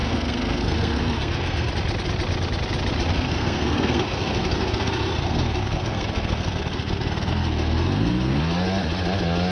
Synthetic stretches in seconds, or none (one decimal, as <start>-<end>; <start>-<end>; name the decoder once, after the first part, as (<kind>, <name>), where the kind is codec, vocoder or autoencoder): 0.0-1.7 (codec, SNAC); 3.1-8.4